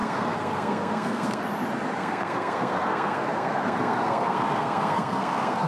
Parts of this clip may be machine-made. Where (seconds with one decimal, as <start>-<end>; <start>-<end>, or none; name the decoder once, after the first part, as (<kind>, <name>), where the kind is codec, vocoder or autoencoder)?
0.0-1.5 (codec, SNAC); 2.0-5.7